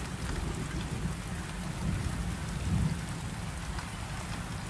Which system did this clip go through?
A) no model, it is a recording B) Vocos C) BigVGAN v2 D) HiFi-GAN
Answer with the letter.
A